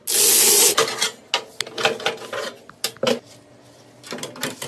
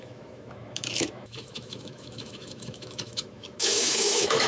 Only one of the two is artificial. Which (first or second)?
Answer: second